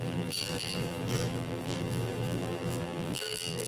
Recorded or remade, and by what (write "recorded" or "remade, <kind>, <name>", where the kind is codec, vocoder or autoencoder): remade, vocoder, BigVGAN v2